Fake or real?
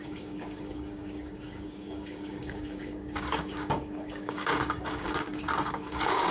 fake